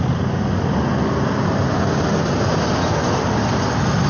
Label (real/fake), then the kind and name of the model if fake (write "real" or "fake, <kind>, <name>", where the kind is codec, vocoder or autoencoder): real